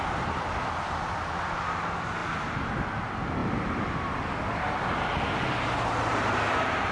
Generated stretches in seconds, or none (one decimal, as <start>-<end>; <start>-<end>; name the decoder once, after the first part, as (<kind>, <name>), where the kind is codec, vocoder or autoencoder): 3.4-6.9 (vocoder, BigVGAN v2)